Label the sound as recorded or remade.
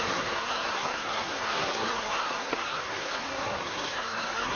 remade